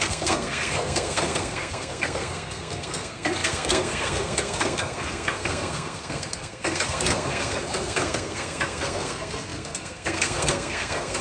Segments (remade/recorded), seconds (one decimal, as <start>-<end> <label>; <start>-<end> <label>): 0.0-11.2 remade